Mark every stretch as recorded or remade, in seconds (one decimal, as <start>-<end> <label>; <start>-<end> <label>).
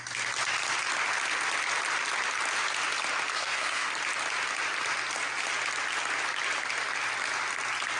0.0-3.3 recorded; 3.3-3.9 remade; 3.9-8.0 recorded